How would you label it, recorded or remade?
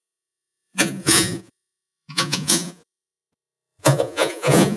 remade